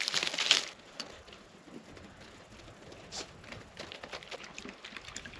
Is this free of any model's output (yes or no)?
yes